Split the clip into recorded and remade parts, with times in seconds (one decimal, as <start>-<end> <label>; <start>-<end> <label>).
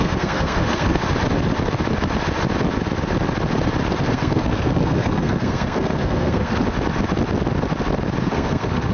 0.0-1.0 remade; 1.0-4.0 recorded; 4.0-6.6 remade; 6.6-8.2 recorded; 8.2-8.9 remade